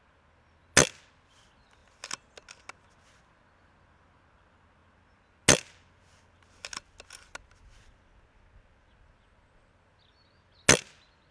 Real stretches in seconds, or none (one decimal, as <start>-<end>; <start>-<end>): 0.0-11.3